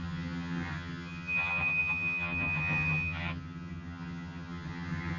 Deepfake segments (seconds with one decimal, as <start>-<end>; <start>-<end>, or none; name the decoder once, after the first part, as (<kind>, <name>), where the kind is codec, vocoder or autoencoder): 0.0-5.2 (vocoder, HiFi-GAN)